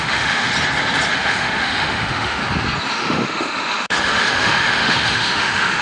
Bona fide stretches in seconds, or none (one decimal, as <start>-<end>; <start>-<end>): 0.5-1.1; 2.4-2.9

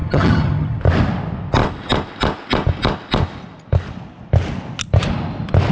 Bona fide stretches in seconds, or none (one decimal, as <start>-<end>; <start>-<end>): 0.8-5.7